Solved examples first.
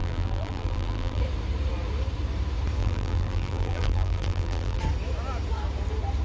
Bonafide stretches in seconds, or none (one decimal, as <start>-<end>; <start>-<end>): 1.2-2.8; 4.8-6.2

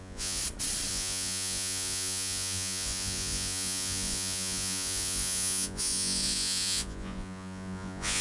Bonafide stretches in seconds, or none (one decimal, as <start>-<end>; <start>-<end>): 0.4-0.9

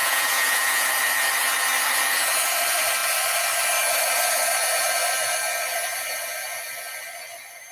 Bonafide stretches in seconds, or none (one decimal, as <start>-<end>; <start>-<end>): 0.9-7.7

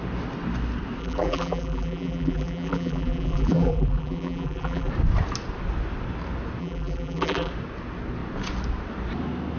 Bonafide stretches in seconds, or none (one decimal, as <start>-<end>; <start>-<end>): 0.0-1.0; 4.9-6.6; 7.5-9.6

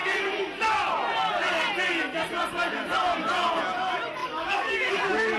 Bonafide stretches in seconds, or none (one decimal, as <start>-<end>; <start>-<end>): 0.0-4.2; 4.9-5.4

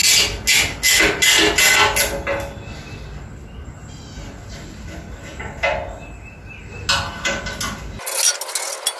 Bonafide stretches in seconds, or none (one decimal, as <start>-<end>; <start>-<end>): 0.0-9.0